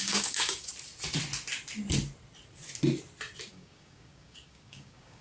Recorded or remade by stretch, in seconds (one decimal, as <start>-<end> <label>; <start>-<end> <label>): 0.0-0.7 remade; 0.7-3.5 recorded; 3.5-5.2 remade